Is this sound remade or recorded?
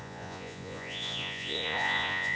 remade